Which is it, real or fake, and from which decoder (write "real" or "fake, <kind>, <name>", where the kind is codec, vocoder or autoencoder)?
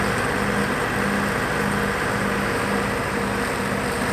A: real